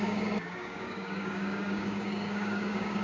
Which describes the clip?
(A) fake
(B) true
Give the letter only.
A